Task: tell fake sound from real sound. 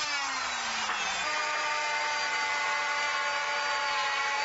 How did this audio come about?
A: real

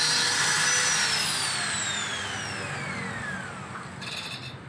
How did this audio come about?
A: real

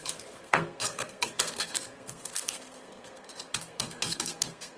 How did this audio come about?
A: fake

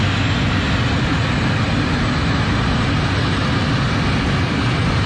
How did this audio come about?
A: real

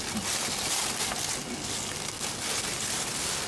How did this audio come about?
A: real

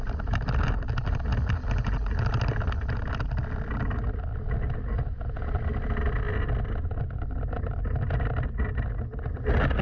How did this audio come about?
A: real